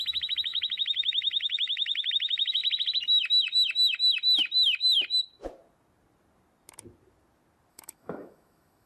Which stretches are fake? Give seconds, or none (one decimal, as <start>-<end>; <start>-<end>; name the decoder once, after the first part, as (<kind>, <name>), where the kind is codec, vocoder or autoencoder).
0.0-2.6 (autoencoder, DAC-VAE); 7.7-8.9